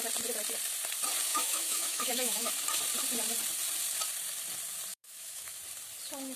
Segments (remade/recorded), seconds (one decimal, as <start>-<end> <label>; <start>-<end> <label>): 0.0-1.3 recorded; 1.3-2.5 remade; 2.5-4.9 recorded; 4.9-5.6 remade; 5.6-6.4 recorded